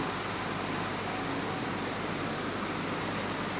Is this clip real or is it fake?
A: real